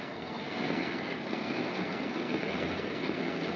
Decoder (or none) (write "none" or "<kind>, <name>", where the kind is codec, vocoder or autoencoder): codec, SNAC